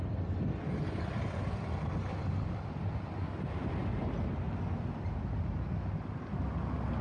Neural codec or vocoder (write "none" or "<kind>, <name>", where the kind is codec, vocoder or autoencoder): none